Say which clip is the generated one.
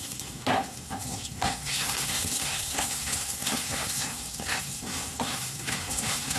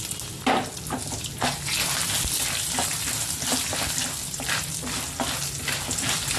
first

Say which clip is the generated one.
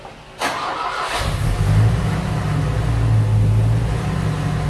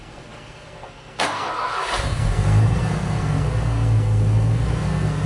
second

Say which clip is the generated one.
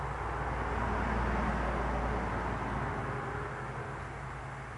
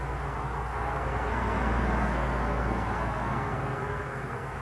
second